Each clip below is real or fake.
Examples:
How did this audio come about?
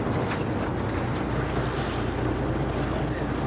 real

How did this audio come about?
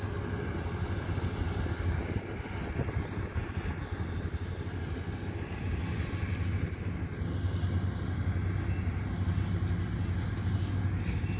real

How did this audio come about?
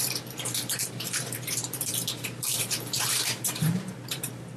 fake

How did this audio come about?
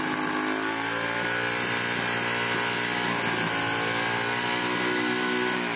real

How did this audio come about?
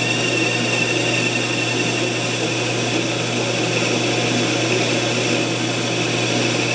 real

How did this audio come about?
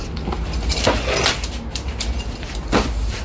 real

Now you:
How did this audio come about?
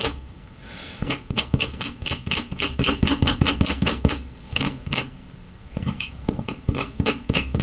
fake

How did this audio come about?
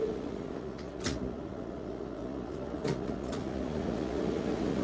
fake